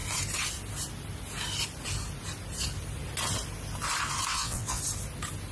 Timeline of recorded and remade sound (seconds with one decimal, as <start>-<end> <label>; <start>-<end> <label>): 0.0-4.3 recorded; 4.3-4.8 remade; 4.8-5.5 recorded